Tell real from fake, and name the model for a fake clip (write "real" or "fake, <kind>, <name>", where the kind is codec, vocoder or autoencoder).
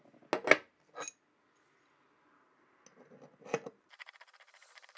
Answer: real